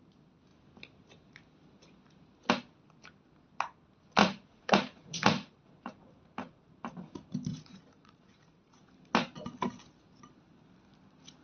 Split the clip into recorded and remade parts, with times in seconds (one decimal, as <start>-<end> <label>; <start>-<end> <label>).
0.0-4.2 recorded; 4.2-6.7 remade; 6.7-7.5 recorded; 7.5-8.8 remade; 8.8-11.4 recorded